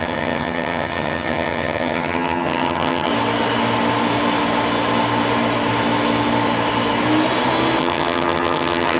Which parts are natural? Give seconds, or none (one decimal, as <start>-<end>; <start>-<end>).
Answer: 3.1-7.8